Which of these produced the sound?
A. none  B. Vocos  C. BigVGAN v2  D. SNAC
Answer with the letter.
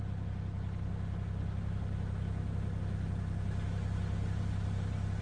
A